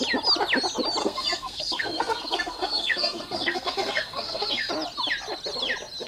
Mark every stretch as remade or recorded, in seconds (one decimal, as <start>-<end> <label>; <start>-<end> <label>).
0.0-1.0 recorded; 1.0-4.7 remade; 4.7-6.1 recorded